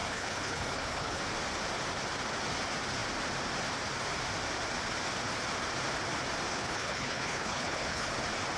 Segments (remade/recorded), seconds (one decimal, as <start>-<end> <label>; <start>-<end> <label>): 0.0-1.2 remade; 1.2-6.5 recorded; 6.5-8.1 remade; 8.1-8.6 recorded